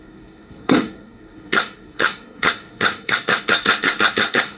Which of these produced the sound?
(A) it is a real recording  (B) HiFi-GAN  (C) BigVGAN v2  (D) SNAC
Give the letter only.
D